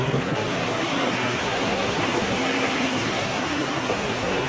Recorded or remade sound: remade